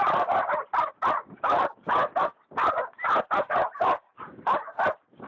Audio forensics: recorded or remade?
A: recorded